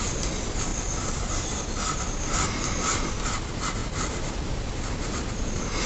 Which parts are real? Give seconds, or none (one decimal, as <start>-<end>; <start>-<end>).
0.0-0.7; 1.3-3.8; 4.7-5.9